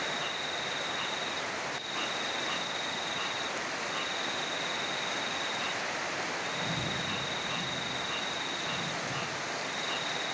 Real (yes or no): yes